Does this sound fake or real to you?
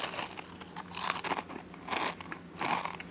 real